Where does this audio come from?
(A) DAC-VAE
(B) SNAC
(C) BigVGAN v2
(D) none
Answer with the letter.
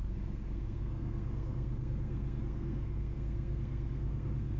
B